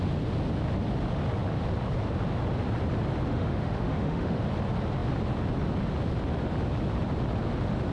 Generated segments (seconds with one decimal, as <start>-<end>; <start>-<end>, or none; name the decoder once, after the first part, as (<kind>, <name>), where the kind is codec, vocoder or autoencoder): 3.3-4.4 (autoencoder, DAC-VAE)